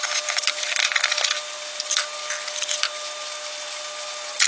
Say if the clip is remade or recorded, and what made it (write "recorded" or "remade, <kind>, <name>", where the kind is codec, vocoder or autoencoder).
recorded